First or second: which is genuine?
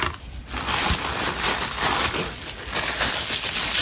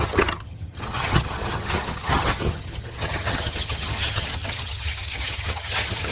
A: first